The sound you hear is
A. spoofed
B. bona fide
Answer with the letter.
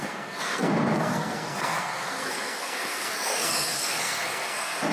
A